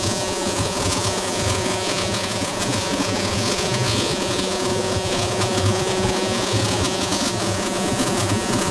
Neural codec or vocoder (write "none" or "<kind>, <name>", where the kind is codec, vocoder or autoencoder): vocoder, Vocos